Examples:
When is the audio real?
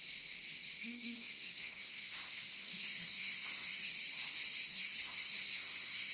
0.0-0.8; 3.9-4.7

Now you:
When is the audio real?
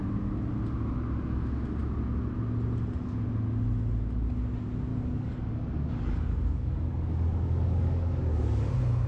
0.0-4.9; 8.7-9.1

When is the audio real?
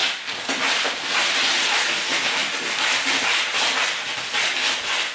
0.0-5.1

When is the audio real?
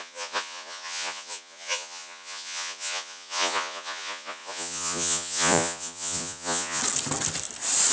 6.8-7.9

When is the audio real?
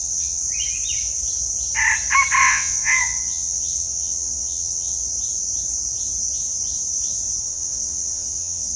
0.4-2.4; 5.0-7.4